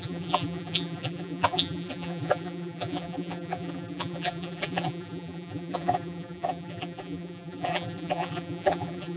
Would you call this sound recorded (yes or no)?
no